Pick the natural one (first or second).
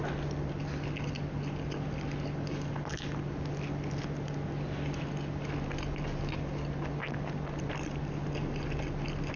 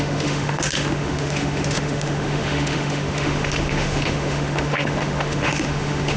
first